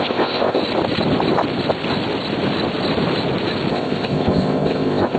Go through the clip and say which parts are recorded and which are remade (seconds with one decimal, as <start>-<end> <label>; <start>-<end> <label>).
0.0-0.6 remade; 0.6-3.7 recorded; 3.7-5.2 remade